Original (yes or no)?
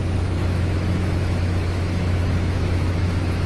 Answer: no